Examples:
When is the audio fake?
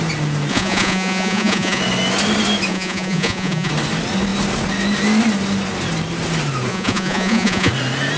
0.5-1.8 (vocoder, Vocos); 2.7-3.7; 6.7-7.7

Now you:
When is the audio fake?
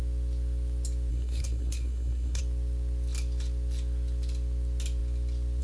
1.1-2.4 (codec, SNAC)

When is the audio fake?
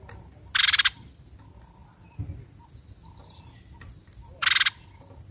none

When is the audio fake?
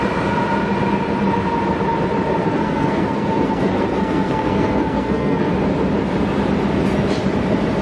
2.4-5.5 (codec, SNAC)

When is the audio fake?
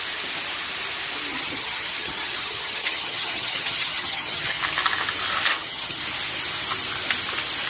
1.3-4.6 (vocoder, HiFi-GAN); 5.5-6.0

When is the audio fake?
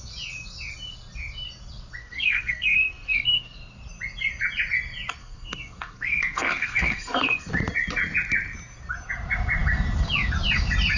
2.0-3.6 (codec, SNAC); 5.2-7.5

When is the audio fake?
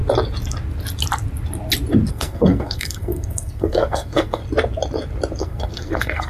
2.1-4.4 (codec, SNAC); 5.4-6.3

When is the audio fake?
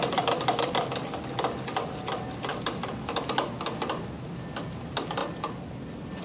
none